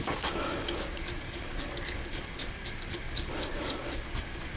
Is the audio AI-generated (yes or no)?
yes